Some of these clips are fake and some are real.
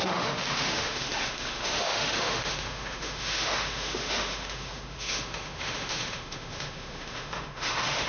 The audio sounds fake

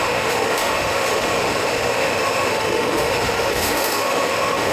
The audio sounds fake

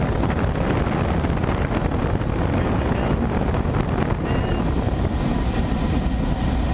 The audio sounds real